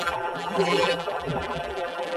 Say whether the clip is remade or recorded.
remade